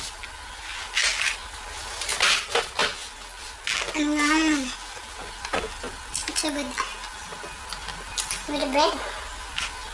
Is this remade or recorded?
recorded